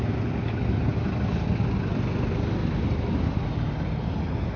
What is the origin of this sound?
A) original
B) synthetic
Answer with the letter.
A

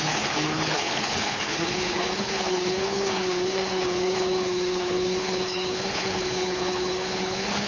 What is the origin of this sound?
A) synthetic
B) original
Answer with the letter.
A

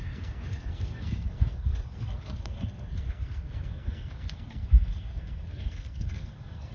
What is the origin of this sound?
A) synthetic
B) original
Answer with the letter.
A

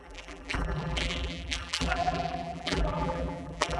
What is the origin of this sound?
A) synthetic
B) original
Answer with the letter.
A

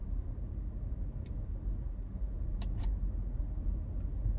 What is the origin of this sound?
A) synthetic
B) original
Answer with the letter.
B